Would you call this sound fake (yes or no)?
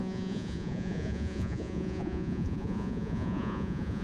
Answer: yes